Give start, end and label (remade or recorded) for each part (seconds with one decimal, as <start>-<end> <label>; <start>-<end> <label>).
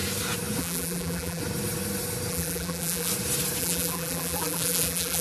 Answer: 0.0-0.6 recorded; 0.6-1.4 remade; 1.4-2.3 recorded; 2.3-3.1 remade; 3.1-3.6 recorded; 3.6-5.2 remade